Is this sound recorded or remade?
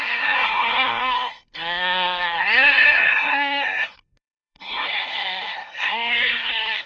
remade